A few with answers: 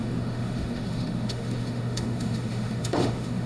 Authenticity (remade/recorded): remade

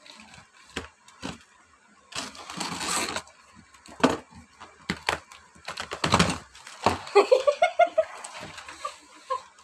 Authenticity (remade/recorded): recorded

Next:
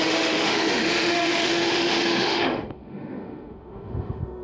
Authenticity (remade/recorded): remade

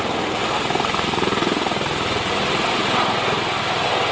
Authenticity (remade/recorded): recorded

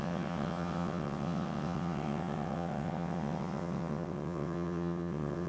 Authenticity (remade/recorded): remade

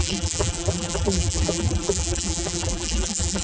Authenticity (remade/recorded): remade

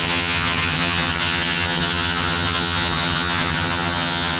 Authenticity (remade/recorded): remade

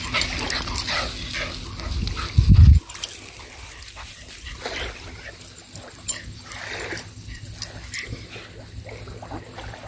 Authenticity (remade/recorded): recorded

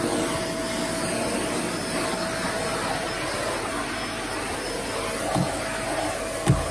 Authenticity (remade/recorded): recorded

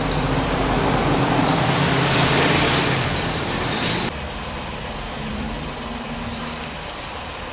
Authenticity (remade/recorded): remade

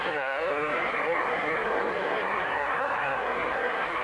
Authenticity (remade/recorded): remade